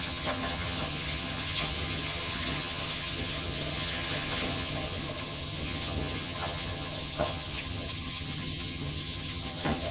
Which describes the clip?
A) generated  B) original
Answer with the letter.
A